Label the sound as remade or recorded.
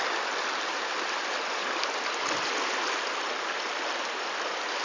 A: recorded